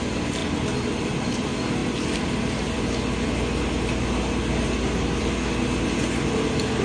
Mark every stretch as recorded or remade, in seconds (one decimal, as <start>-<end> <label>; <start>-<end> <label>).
0.0-6.8 recorded